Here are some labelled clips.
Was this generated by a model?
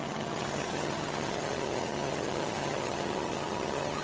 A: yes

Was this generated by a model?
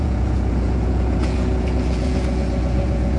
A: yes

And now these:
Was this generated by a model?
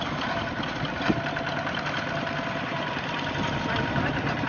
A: no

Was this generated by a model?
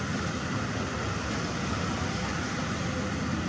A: no